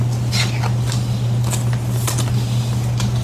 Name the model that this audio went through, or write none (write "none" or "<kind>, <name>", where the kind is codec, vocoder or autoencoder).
none